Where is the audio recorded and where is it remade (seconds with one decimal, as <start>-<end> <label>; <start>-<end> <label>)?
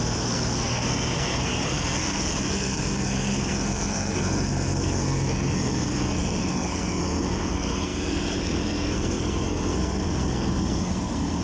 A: 0.0-11.4 remade